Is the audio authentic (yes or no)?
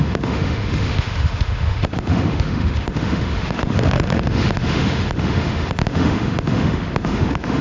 no